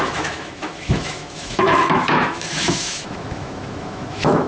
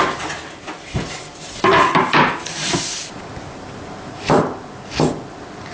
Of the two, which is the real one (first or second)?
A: second